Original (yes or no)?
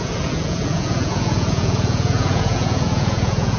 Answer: no